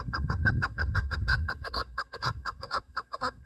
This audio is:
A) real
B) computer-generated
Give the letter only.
B